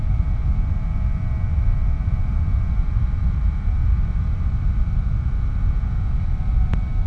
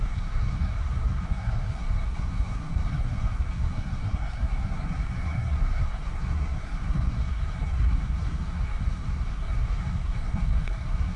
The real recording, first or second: first